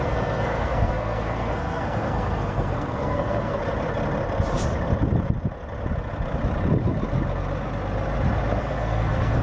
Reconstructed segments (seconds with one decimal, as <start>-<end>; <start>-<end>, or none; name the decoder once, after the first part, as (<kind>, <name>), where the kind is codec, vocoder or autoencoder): 0.0-3.6 (codec, SNAC); 8.6-9.4